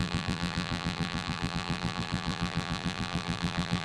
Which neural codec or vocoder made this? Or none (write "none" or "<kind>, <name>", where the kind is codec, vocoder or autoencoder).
vocoder, BigVGAN v2